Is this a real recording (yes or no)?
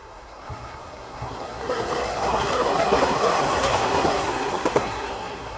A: no